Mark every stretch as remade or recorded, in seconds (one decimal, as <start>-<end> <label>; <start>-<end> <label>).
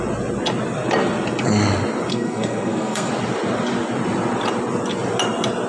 0.0-2.1 recorded; 2.1-3.1 remade; 3.1-5.7 recorded